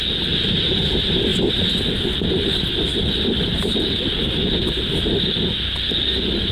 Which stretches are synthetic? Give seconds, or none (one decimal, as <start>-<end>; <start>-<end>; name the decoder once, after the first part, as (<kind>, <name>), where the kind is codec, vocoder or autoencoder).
none